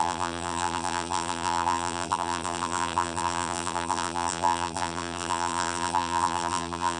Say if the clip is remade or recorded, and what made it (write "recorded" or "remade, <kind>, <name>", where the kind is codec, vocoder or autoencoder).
remade, vocoder, BigVGAN v2